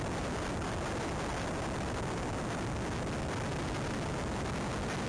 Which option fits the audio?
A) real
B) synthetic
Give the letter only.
A